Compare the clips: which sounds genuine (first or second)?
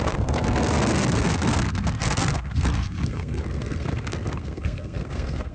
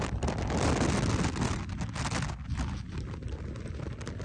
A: second